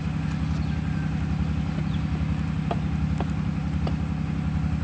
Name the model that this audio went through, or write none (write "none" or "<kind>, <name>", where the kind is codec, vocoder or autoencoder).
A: none